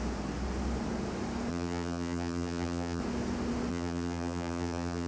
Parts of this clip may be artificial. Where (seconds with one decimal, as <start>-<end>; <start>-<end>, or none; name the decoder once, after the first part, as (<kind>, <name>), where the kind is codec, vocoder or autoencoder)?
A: 1.5-3.0 (vocoder, BigVGAN v2); 3.7-5.1